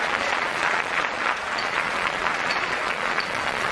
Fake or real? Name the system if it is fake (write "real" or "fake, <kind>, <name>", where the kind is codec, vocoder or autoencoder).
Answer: fake, vocoder, Vocos